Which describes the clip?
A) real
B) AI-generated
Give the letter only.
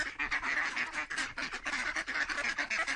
A